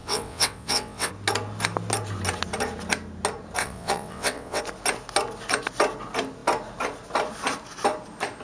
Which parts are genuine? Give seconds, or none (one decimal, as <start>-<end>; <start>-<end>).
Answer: 1.1-3.6; 4.6-8.4